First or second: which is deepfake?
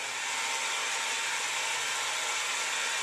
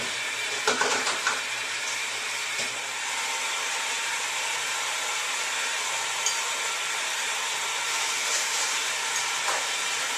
second